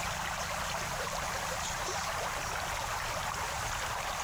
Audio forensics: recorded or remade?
recorded